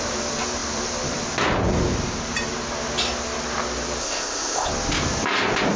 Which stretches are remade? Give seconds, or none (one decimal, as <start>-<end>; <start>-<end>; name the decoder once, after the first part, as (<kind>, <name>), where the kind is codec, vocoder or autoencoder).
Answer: 4.0-4.7 (codec, ZipCodec)